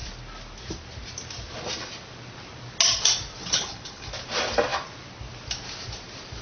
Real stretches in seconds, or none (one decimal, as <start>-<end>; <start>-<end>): 0.0-3.4; 4.1-6.4